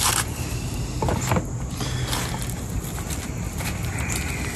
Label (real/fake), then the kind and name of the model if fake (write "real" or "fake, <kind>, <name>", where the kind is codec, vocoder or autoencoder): real